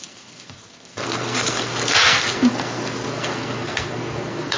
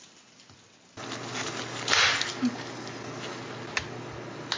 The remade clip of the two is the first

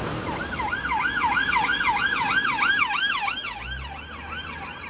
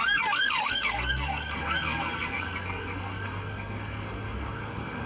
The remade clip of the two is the second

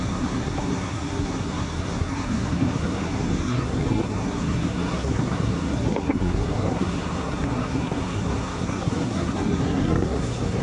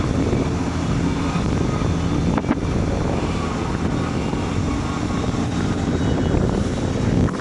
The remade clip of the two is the first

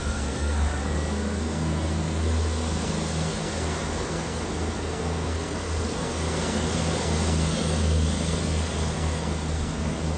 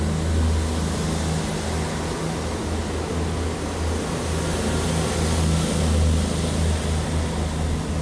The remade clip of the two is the first